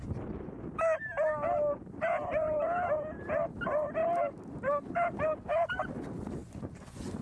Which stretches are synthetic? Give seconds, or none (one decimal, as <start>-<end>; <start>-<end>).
6.4-7.2